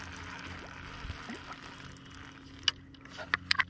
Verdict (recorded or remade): recorded